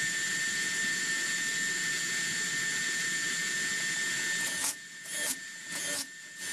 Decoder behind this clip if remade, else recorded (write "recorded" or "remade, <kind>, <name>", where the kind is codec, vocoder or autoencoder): remade, vocoder, Vocos